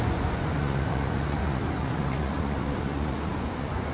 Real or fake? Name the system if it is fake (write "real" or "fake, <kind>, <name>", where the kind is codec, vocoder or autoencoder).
fake, vocoder, Vocos